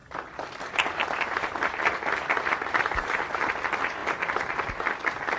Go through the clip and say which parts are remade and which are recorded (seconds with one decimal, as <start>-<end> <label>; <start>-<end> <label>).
0.0-0.6 remade; 0.6-5.4 recorded